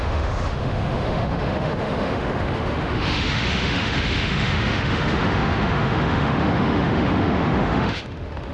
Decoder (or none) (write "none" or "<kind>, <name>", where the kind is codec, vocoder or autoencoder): autoencoder, DAC-VAE